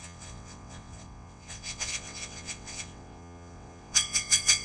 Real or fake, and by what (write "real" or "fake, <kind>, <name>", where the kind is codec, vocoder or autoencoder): fake, vocoder, WaveNeXt